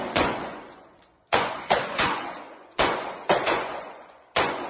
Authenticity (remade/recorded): remade